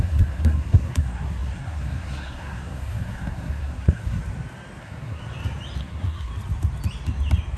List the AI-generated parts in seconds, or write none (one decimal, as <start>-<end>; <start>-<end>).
0.0-4.2; 4.8-5.2; 5.8-6.3